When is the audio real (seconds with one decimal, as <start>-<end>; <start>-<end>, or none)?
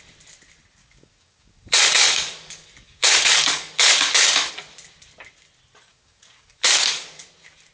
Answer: 0.0-0.8; 4.5-5.9; 7.2-7.7